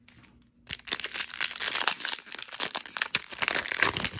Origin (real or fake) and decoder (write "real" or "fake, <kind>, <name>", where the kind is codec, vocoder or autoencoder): real